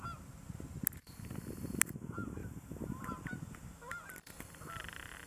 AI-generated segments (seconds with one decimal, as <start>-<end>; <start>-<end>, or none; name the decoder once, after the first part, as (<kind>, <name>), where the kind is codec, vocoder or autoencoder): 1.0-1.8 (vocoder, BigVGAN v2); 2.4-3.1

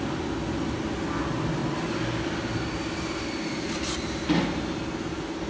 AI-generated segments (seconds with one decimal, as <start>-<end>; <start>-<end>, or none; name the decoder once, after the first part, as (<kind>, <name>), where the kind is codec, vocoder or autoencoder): none

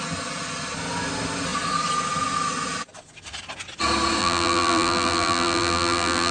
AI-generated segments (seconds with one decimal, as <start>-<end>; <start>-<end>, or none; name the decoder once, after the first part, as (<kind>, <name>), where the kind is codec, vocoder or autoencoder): 4.2-6.3 (vocoder, BigVGAN v2)

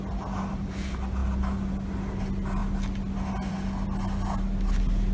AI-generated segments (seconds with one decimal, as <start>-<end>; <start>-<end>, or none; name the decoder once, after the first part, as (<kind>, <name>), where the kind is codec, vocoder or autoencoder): none

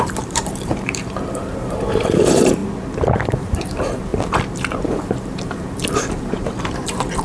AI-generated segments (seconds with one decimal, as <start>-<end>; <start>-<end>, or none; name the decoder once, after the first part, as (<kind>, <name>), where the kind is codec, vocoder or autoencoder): 0.0-2.6 (vocoder, BigVGAN v2); 3.4-7.2